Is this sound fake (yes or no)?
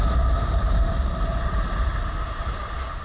no